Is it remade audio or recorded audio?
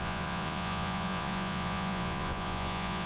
remade